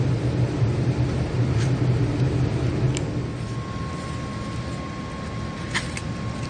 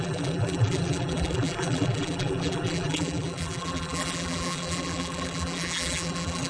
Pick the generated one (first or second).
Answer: second